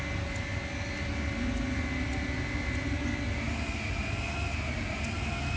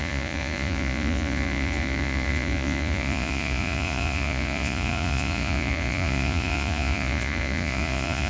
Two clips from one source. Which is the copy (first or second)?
second